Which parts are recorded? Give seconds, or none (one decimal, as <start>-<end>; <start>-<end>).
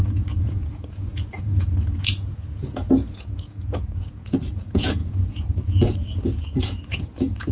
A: none